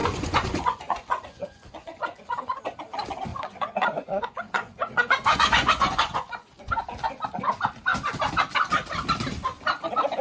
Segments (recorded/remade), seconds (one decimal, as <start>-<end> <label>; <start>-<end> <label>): 0.0-2.6 remade; 2.6-3.3 recorded; 3.3-6.7 remade; 6.7-10.2 recorded